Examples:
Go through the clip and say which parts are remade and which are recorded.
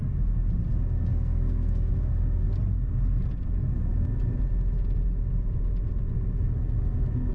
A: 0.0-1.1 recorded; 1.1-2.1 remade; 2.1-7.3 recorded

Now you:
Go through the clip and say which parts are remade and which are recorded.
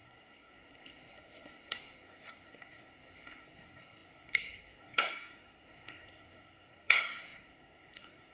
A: 0.0-8.3 remade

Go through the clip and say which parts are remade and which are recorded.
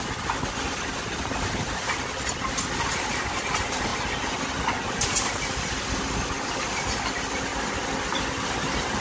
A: 0.0-9.0 recorded